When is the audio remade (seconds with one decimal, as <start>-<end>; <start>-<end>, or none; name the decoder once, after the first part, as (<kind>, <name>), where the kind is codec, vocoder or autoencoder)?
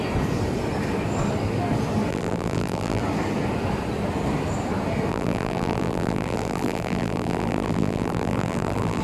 2.1-3.0 (vocoder, BigVGAN v2); 5.1-9.0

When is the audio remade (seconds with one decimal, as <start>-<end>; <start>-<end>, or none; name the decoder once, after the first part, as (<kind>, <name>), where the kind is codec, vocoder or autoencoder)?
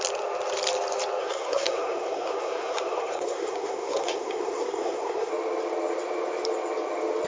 1.2-5.3 (codec, SNAC)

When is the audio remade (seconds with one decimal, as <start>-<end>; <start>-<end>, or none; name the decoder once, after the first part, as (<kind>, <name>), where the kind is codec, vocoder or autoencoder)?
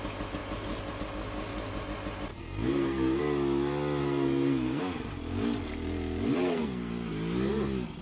2.3-3.2 (codec, SNAC); 4.0-4.8; 6.4-6.9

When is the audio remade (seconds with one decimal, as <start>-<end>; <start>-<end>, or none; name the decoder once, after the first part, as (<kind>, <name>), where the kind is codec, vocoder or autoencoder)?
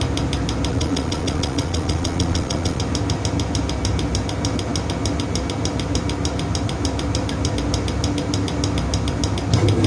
0.7-2.8 (vocoder, Vocos)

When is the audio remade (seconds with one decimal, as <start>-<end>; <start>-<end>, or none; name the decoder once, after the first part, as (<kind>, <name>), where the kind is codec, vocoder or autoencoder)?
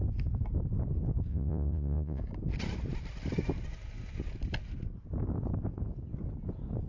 1.3-2.2 (vocoder, Vocos)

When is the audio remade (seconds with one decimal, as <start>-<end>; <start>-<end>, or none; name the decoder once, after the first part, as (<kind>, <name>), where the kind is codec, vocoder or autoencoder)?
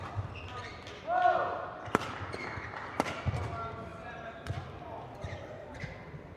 none